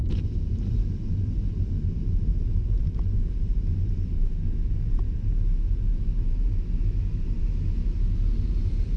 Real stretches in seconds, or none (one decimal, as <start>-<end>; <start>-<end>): none